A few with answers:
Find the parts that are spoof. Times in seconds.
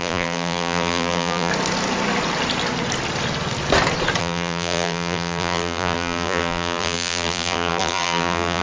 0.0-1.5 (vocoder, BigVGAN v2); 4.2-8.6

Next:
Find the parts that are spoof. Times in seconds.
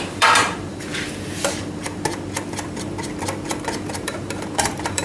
0.0-0.9 (vocoder, BigVGAN v2); 1.5-1.9; 3.9-5.0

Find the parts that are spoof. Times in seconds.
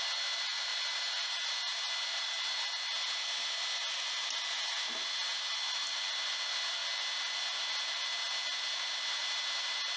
none